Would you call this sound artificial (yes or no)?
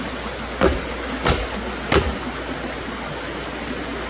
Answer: no